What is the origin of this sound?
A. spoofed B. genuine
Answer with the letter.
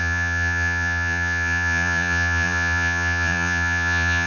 A